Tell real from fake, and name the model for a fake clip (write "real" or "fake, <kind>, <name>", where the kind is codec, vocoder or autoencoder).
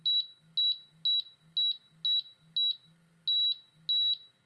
real